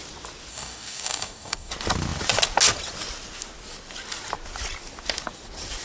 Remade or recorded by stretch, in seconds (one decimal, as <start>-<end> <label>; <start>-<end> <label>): 0.0-0.5 recorded; 0.5-1.7 remade; 1.7-5.8 recorded